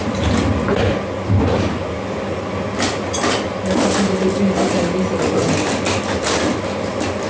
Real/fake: real